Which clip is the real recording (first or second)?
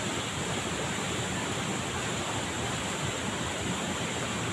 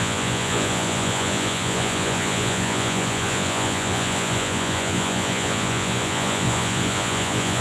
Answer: first